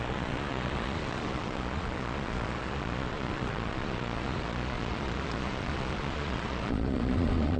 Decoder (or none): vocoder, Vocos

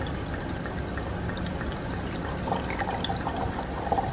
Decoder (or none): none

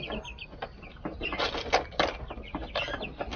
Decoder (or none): none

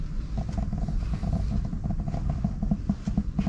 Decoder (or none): none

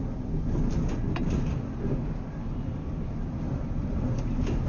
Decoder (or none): none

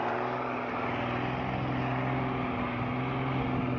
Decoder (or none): none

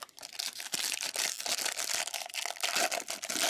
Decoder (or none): none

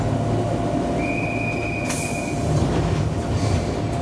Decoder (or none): none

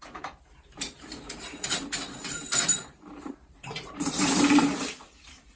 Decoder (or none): vocoder, BigVGAN v2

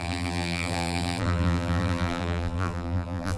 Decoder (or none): vocoder, BigVGAN v2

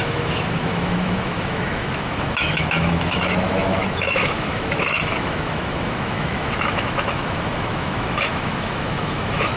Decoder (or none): autoencoder, DAC-VAE